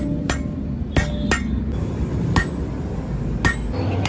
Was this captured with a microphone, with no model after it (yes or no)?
yes